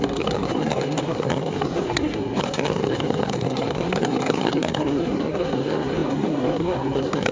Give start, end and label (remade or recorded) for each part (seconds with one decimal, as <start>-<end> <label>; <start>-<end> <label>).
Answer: 0.0-7.3 remade